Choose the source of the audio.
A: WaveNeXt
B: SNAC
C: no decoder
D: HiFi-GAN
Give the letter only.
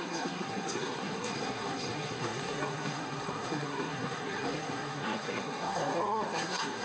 B